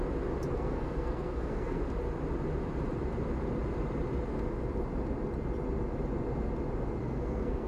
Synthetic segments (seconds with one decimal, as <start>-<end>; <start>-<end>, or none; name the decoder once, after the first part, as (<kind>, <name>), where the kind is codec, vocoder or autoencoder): 0.5-1.8 (codec, SNAC); 7.0-7.7